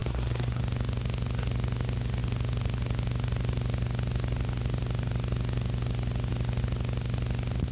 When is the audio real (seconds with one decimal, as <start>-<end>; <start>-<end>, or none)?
0.6-7.7